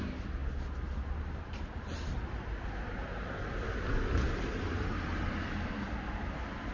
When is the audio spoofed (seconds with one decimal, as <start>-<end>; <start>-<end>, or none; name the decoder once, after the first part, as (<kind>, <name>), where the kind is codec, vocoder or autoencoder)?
none